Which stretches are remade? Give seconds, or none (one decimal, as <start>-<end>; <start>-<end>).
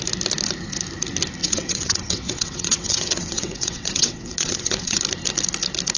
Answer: 1.4-5.0